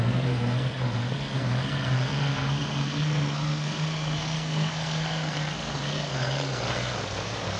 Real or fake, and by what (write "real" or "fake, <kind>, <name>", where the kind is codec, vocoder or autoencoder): fake, codec, SNAC